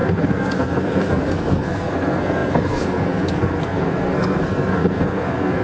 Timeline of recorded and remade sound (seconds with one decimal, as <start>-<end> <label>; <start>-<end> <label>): 0.0-5.6 remade